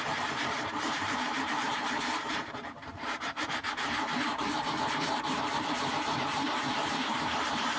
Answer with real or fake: fake